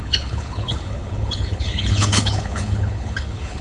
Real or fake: fake